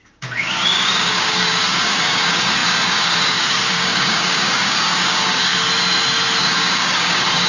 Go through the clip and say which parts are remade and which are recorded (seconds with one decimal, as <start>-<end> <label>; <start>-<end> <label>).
0.0-5.5 remade; 5.5-6.4 recorded; 6.4-7.5 remade